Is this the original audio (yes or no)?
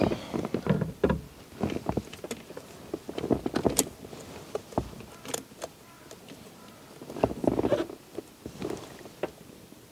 yes